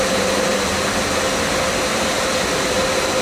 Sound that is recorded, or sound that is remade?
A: recorded